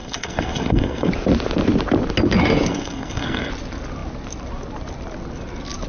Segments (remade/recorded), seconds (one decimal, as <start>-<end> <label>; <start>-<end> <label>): 0.0-1.1 remade; 1.1-2.7 recorded; 2.7-3.5 remade; 3.5-5.9 recorded